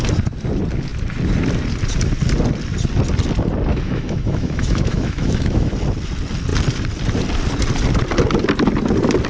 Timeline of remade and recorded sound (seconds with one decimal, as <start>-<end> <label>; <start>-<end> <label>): 0.0-3.7 recorded; 3.7-5.7 remade; 5.7-9.3 recorded